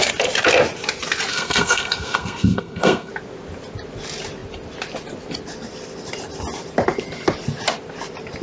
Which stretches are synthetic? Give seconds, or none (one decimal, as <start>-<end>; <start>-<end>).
1.3-3.1